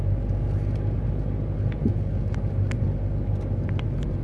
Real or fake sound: real